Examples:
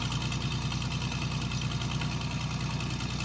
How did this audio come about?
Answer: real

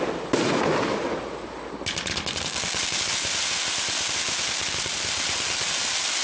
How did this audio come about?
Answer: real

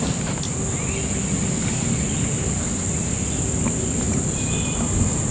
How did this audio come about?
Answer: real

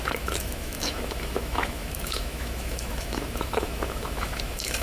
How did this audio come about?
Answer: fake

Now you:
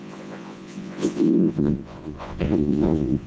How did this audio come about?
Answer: fake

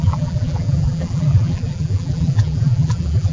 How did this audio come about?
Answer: fake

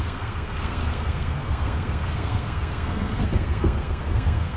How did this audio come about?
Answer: fake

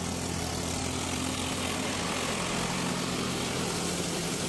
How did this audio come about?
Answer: real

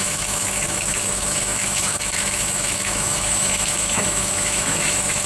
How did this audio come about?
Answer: fake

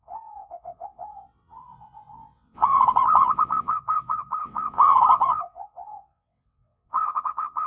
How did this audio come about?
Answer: fake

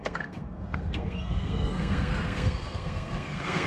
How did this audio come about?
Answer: fake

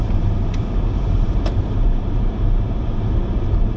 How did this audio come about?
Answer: fake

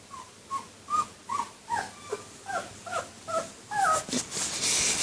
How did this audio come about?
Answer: real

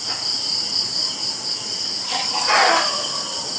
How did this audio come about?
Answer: real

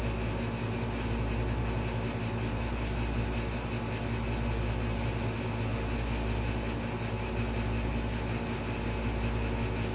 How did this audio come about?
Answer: real